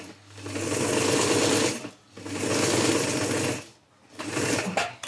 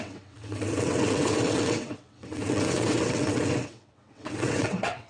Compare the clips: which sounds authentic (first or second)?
first